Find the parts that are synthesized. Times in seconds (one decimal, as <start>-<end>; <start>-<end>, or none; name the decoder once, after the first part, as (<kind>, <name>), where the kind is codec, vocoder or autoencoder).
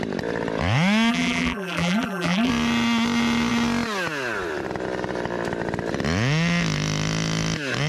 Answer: 1.1-2.5 (vocoder, BigVGAN v2)